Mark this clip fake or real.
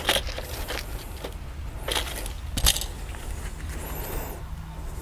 real